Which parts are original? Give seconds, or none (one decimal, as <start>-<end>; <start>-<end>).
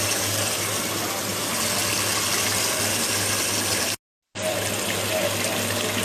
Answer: 0.0-6.0